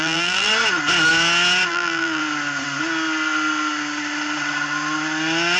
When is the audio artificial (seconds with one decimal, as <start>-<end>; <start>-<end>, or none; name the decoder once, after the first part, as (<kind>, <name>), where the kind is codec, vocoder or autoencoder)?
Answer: 0.0-0.5 (vocoder, BigVGAN v2); 1.7-2.2